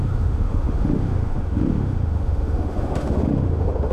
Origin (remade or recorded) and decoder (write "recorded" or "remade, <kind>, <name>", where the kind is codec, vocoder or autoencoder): remade, autoencoder, DAC-VAE